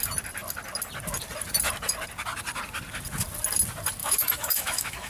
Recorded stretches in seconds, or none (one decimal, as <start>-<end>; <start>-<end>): 0.0-4.0